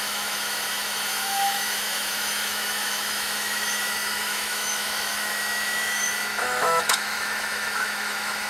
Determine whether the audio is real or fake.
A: fake